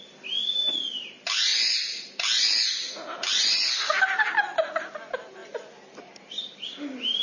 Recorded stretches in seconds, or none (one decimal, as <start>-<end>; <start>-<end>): 0.0-7.2